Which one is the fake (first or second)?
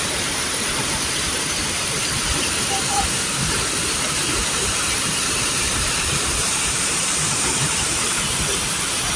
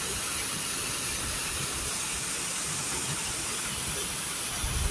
first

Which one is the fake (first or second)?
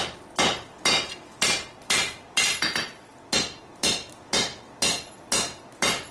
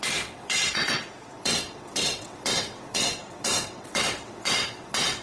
second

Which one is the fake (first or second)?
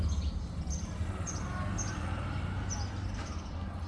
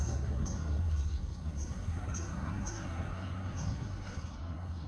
second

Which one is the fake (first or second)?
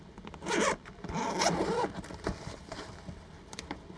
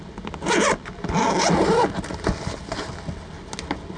first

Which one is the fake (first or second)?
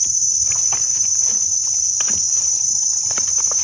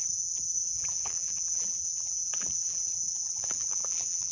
second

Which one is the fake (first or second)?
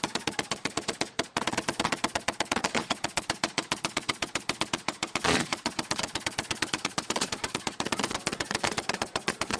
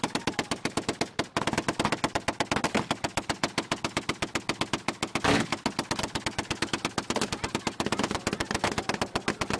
first